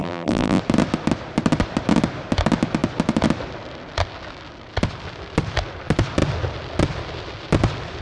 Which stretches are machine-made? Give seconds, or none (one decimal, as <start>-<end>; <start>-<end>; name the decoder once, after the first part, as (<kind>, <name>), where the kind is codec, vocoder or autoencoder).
0.0-0.6 (vocoder, BigVGAN v2)